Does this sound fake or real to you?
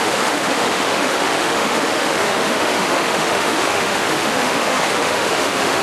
fake